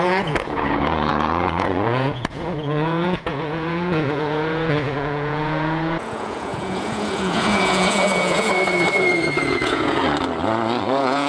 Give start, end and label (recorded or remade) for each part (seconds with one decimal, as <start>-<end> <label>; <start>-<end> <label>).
0.0-8.5 remade; 8.5-9.5 recorded; 9.5-10.0 remade; 10.0-10.8 recorded; 10.8-11.3 remade